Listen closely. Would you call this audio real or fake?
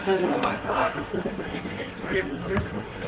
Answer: fake